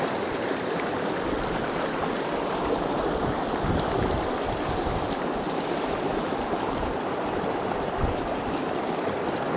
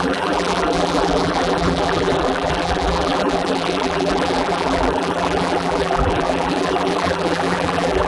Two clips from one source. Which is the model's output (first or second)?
second